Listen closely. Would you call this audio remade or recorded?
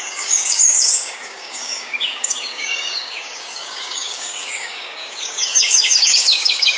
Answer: remade